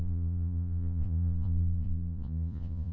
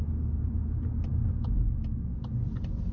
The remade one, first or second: first